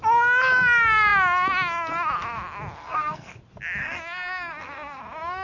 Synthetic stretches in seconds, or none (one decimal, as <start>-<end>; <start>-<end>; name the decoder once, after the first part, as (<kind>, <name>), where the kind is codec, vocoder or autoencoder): 2.8-3.3 (codec, SNAC); 3.8-5.0